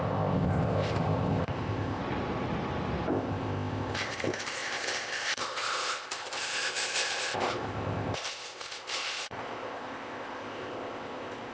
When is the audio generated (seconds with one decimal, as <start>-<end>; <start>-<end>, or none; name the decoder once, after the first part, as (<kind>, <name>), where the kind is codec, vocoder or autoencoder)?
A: 0.0-2.0 (codec, ZipCodec); 3.1-11.5